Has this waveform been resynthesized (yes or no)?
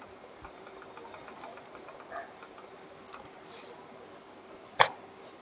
no